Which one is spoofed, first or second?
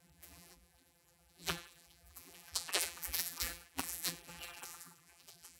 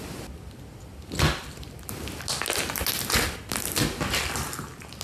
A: first